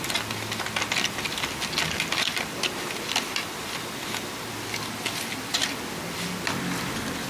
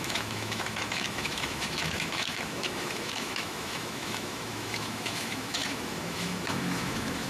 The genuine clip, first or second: first